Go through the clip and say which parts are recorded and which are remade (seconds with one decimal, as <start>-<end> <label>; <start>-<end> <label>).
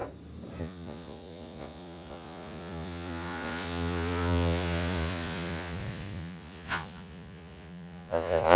0.0-0.6 recorded; 0.6-8.6 remade